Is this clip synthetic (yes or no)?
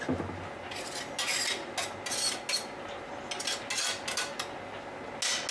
no